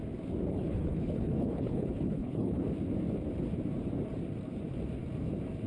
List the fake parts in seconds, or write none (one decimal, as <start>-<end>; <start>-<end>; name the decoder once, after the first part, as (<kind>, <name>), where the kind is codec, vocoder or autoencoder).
0.5-2.6 (codec, HILCodec)